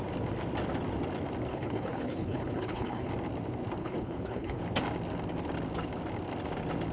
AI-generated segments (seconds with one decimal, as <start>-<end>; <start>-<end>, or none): 1.5-3.1; 3.8-4.6